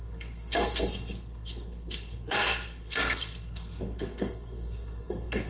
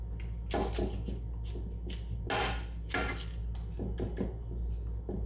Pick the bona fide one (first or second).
second